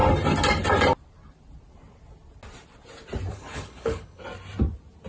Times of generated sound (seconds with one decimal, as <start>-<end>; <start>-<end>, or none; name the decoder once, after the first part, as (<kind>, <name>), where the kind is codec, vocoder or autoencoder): 3.3-4.2 (codec, HILCodec)